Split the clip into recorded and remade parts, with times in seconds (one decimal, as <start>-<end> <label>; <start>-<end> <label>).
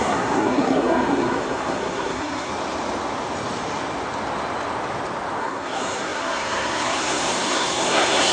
0.0-2.5 remade; 2.5-5.4 recorded; 5.4-8.3 remade